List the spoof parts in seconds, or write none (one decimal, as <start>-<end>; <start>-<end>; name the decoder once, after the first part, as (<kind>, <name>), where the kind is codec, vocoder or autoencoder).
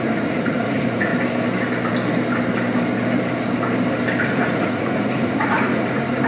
0.0-1.1 (vocoder, Vocos); 4.2-6.3